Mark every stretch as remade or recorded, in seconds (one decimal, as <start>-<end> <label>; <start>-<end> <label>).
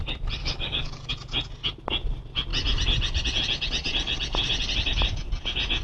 0.0-0.4 recorded; 0.4-1.1 remade; 1.1-5.8 recorded